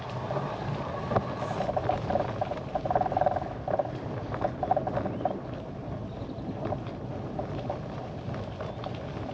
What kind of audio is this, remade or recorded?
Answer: recorded